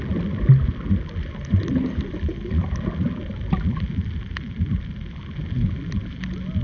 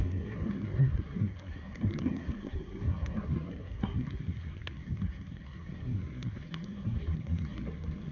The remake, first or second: second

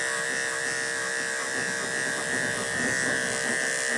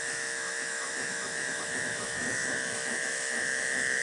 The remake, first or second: second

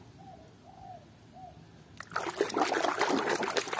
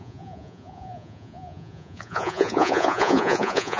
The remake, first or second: second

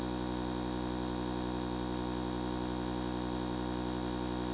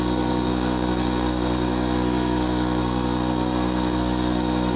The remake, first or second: second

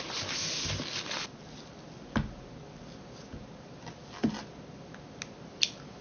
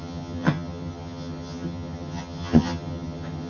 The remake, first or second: second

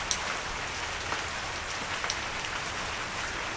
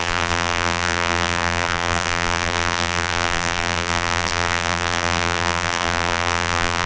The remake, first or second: second